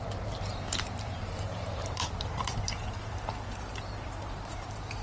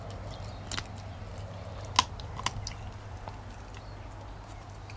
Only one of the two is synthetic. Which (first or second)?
first